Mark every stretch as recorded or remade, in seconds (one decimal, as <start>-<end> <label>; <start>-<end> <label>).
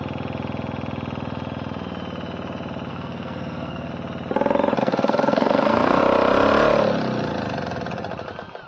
0.0-2.9 recorded; 2.9-3.9 remade; 3.9-4.8 recorded; 4.8-6.0 remade; 6.0-8.7 recorded